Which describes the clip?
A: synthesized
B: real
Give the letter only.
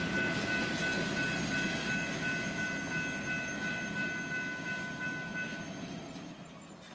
B